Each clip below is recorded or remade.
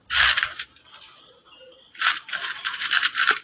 remade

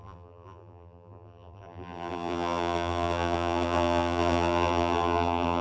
remade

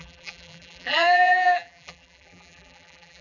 remade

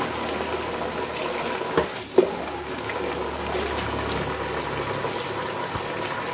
recorded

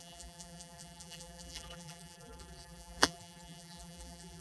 remade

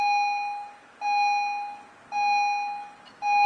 recorded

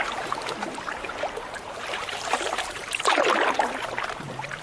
remade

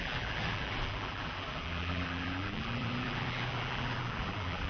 remade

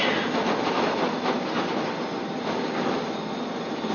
recorded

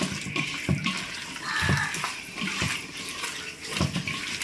remade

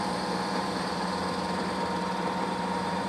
remade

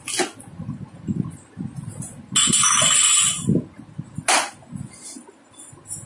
recorded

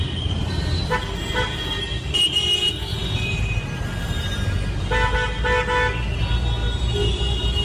recorded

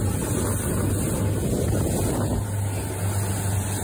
recorded